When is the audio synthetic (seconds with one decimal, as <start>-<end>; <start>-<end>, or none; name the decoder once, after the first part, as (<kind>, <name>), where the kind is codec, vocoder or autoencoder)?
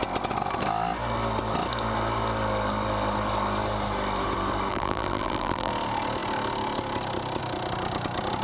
4.7-5.7 (vocoder, BigVGAN v2)